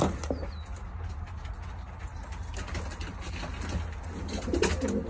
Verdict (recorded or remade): recorded